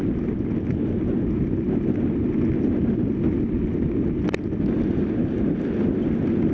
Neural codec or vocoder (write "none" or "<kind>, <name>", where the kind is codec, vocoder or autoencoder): none